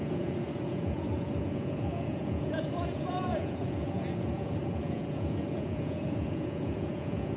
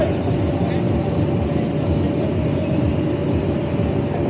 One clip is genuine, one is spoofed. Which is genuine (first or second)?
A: second